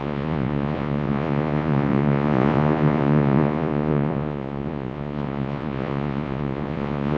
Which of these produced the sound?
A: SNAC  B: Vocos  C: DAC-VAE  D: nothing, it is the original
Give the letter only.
B